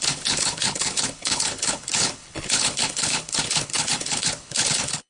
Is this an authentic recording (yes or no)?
no